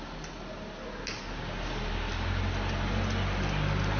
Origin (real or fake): real